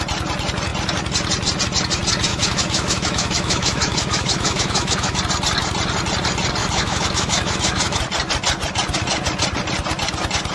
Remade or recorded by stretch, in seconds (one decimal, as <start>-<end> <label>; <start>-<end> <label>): 0.0-2.3 recorded; 2.3-5.2 remade; 5.2-6.6 recorded; 6.6-8.0 remade; 8.0-10.5 recorded